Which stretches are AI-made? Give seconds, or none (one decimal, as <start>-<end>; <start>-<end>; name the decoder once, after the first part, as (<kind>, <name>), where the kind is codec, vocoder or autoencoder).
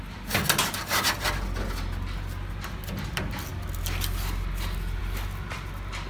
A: none